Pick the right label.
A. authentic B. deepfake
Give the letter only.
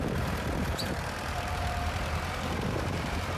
B